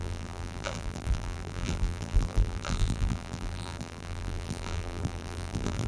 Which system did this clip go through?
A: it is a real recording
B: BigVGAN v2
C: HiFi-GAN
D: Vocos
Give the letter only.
B